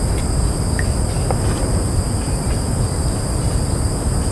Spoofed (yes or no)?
no